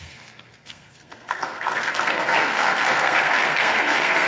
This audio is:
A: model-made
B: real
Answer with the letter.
A